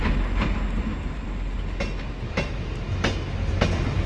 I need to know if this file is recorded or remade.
recorded